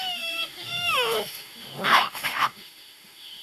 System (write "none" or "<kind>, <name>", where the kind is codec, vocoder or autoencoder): autoencoder, DAC-VAE